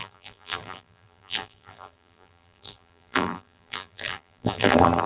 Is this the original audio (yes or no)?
no